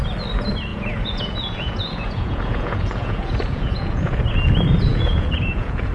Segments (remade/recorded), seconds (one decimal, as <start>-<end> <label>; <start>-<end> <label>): 0.0-0.7 recorded; 0.7-4.2 remade; 4.2-4.9 recorded; 4.9-5.9 remade